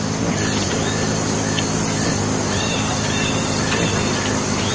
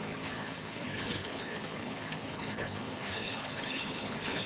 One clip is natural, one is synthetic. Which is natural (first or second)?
first